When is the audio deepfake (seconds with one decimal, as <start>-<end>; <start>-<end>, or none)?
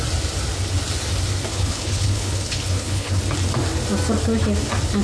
1.5-3.2